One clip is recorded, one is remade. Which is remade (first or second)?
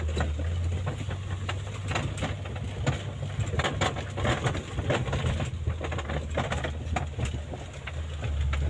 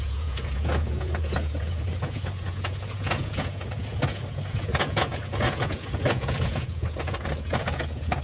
second